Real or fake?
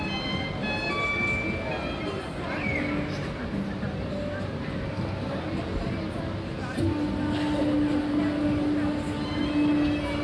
real